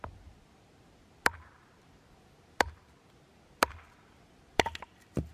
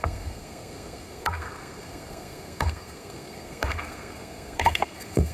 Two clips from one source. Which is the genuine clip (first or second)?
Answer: first